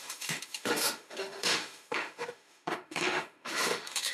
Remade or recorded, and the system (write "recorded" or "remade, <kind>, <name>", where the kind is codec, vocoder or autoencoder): remade, autoencoder, DAC-VAE